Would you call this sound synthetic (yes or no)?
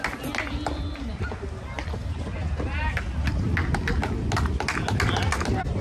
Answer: no